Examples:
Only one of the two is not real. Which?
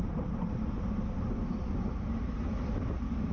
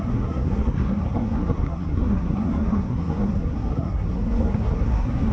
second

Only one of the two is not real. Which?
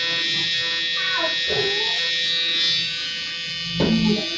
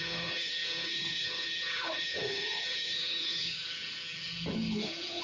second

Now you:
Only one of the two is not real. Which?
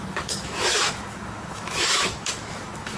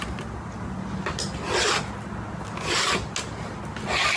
first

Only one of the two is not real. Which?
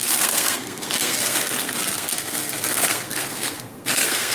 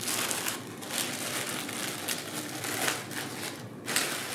first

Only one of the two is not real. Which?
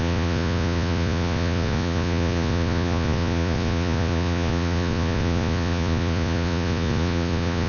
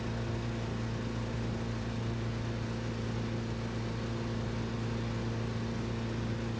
first